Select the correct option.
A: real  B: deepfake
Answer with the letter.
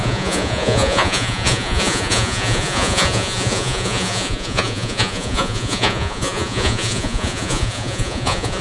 B